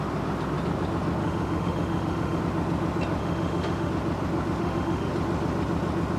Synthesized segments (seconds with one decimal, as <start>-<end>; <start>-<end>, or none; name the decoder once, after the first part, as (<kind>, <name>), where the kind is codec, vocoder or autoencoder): 1.2-2.4 (autoencoder, DAC-VAE); 3.2-3.9; 4.6-5.1